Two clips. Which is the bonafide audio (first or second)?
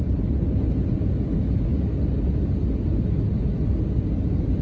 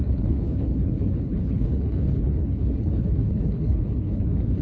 first